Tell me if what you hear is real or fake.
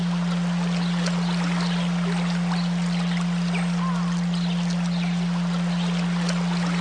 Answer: real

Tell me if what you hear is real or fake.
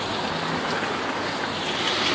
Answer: real